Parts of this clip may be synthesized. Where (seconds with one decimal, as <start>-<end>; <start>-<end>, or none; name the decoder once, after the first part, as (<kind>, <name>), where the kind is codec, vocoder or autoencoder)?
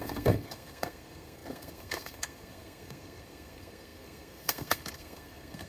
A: 0.0-5.7 (codec, SNAC)